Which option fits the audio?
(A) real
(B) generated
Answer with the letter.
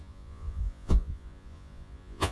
B